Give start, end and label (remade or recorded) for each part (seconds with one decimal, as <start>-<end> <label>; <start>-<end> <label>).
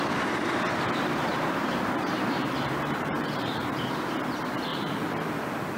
0.0-1.3 recorded; 1.3-3.7 remade; 3.7-4.7 recorded; 4.7-5.3 remade; 5.3-5.8 recorded